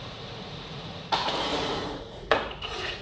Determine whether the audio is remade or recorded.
remade